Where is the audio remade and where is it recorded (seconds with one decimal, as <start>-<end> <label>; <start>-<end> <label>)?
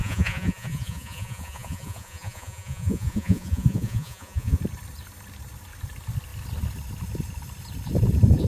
0.0-4.6 remade; 4.6-8.5 recorded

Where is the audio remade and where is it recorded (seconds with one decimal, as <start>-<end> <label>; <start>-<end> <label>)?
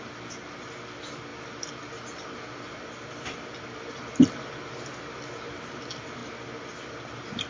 0.0-7.5 recorded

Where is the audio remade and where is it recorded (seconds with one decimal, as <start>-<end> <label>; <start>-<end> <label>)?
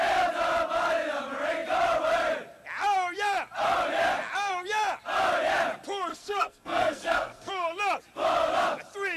0.0-6.1 recorded; 6.1-7.5 remade; 7.5-9.2 recorded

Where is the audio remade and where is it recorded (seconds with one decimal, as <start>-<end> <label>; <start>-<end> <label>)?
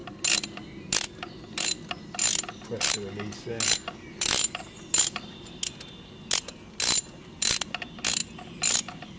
0.0-9.2 recorded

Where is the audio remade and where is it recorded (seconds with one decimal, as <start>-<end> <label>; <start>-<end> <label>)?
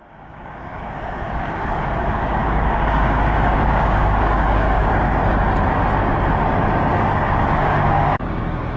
0.0-5.2 remade; 5.2-6.9 recorded; 6.9-8.8 remade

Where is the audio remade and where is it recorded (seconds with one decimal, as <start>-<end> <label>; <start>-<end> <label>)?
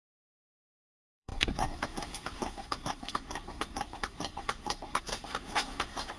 0.0-6.2 remade